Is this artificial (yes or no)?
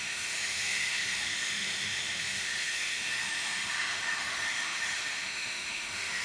yes